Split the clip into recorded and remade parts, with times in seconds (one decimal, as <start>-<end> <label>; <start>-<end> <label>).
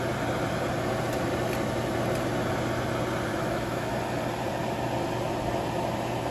0.0-3.3 recorded; 3.3-3.9 remade; 3.9-6.3 recorded